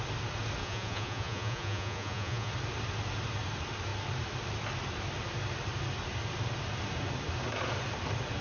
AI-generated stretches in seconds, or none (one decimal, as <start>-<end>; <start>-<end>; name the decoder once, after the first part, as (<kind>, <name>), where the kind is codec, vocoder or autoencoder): 0.6-2.5 (vocoder, Vocos)